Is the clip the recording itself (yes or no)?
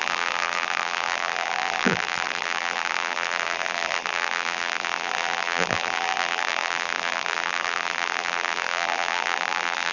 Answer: no